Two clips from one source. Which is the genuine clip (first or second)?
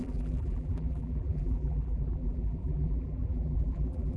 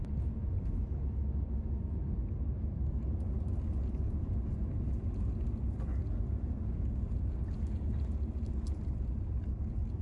second